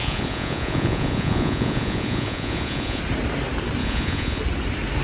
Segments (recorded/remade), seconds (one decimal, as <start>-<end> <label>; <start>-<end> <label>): 0.0-3.0 remade; 3.0-3.8 recorded; 3.8-4.4 remade; 4.4-5.0 recorded